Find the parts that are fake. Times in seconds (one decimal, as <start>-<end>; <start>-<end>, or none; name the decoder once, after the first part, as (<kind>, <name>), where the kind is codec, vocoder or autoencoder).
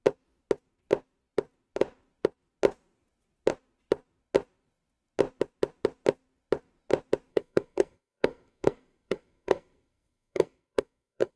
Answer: 7.3-11.4 (codec, SNAC)